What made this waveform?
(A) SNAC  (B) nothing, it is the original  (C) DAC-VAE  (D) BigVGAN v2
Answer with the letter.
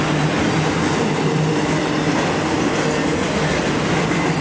B